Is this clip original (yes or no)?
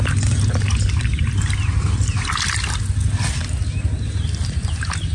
yes